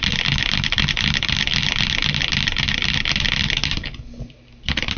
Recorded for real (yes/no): yes